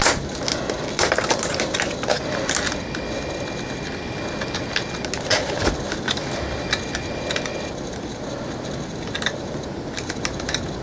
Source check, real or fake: real